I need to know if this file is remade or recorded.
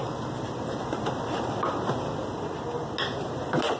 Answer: recorded